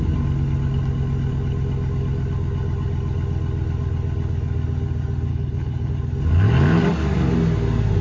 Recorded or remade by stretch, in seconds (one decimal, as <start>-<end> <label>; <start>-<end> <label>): 0.0-5.3 recorded; 5.3-5.9 remade; 5.9-8.0 recorded